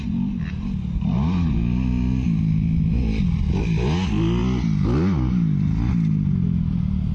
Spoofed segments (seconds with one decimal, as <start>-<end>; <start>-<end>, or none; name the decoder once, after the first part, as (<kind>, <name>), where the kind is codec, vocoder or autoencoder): none